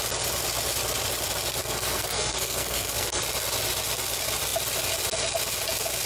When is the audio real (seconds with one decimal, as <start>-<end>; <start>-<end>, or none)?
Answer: 0.0-1.6; 3.2-6.1